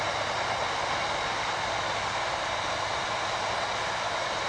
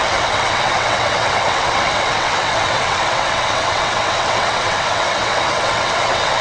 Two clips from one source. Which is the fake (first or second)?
second